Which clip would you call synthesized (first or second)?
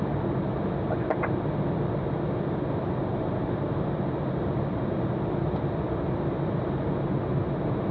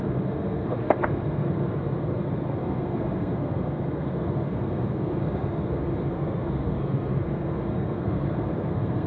second